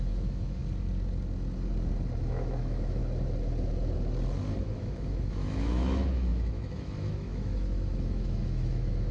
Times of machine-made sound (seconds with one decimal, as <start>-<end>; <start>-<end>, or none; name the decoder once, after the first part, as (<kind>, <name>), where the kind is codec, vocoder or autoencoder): 0.0-0.6 (autoencoder, DAC-VAE); 2.2-3.0; 4.6-9.1